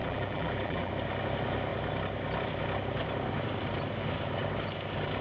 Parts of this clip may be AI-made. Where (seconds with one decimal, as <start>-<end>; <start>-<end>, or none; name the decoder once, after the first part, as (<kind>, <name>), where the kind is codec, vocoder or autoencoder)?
0.0-0.9 (vocoder, BigVGAN v2)